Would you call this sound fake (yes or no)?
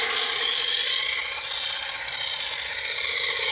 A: no